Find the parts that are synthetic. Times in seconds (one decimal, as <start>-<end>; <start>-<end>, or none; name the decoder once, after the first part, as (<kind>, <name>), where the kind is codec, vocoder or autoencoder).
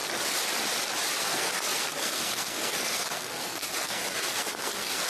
1.2-5.1 (codec, SNAC)